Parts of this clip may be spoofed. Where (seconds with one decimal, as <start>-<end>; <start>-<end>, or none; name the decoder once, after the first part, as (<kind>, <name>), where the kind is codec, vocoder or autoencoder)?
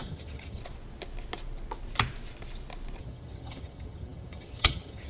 0.0-0.6 (vocoder, HiFi-GAN); 3.0-5.1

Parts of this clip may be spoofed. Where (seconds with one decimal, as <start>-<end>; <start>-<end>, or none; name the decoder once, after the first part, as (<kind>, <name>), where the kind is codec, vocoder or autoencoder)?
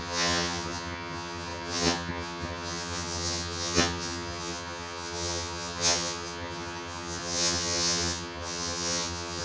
0.0-9.4 (vocoder, HiFi-GAN)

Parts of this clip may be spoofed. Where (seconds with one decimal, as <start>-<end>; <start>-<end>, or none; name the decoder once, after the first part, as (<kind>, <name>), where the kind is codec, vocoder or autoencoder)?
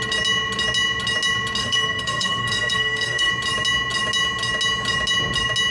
1.6-3.3 (codec, SNAC)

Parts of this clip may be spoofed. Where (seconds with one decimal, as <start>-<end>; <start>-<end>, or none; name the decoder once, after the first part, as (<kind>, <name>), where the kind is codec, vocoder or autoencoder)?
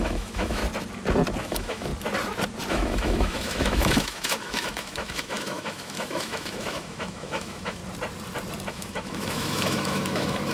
0.0-0.6 (autoencoder, DAC-VAE); 1.4-1.9; 2.7-7.8; 8.7-10.5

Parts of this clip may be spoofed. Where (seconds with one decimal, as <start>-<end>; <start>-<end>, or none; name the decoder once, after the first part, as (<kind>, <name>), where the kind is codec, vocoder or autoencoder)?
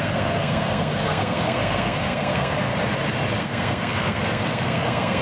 0.0-2.7 (codec, SNAC); 3.4-5.2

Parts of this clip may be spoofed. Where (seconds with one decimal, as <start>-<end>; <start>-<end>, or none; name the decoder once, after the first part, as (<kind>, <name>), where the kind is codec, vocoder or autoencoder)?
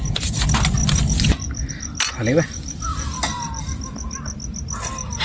0.8-1.7 (vocoder, BigVGAN v2); 2.9-3.6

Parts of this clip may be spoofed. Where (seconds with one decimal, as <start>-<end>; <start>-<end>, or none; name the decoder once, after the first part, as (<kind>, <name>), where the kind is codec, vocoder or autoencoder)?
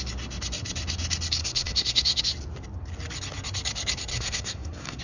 1.4-2.2 (codec, SNAC); 4.1-5.0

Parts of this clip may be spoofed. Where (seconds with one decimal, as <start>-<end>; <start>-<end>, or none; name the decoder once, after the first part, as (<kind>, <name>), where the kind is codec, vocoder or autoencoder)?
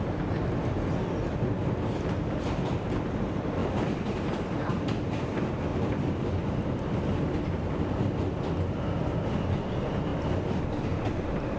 none